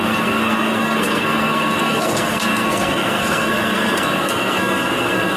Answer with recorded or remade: remade